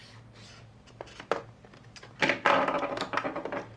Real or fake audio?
real